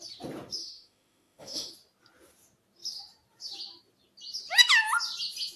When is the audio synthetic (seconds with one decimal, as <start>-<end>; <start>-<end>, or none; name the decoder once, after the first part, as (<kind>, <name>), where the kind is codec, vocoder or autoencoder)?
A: 0.6-1.7 (autoencoder, DAC-VAE)